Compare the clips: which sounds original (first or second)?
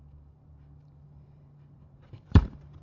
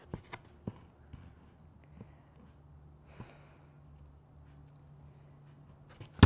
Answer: second